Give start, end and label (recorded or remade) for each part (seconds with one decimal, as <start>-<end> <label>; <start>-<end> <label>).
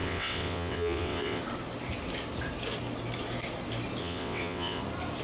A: 0.0-1.4 remade; 1.4-4.0 recorded; 4.0-4.8 remade; 4.8-5.2 recorded